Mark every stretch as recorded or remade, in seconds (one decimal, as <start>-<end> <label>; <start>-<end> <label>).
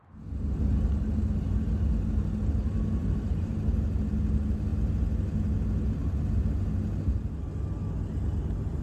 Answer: 0.0-3.0 recorded; 3.0-3.5 remade; 3.5-8.8 recorded